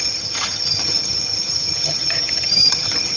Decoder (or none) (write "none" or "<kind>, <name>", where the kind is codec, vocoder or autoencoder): vocoder, HiFi-GAN